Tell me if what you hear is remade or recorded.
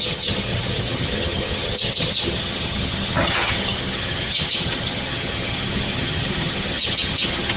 remade